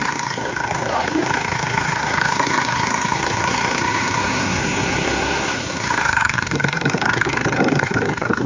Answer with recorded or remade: remade